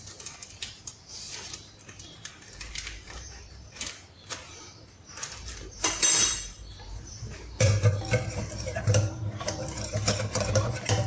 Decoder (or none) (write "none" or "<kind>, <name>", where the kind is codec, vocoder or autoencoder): vocoder, BigVGAN v2